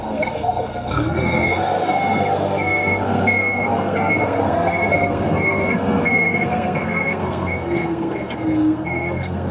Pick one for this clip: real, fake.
fake